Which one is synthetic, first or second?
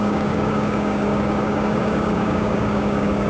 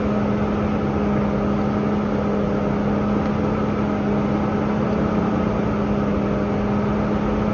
first